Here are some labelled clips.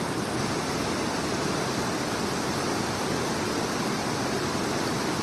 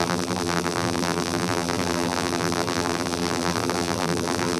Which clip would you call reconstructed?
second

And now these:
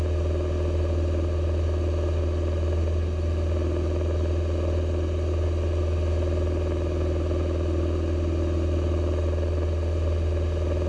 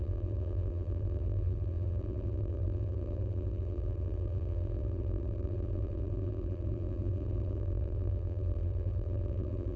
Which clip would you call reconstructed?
second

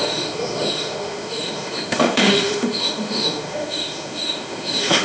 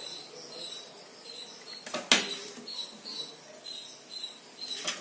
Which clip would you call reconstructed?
first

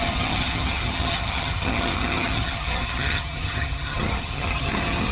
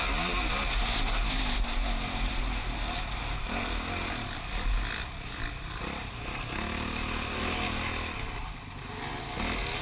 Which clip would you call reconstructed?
first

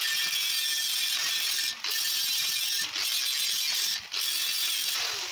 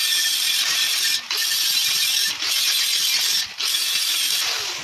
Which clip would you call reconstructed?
second